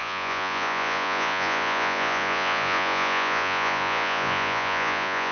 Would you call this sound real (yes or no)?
no